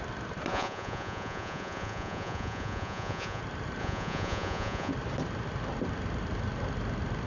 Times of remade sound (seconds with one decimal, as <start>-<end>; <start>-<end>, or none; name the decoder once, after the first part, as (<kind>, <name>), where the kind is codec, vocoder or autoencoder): 0.5-3.4 (vocoder, Vocos); 3.8-4.9